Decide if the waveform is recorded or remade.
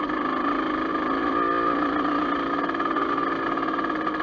recorded